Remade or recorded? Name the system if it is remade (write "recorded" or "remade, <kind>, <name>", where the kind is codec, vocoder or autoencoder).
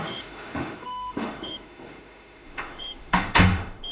remade, autoencoder, DAC-VAE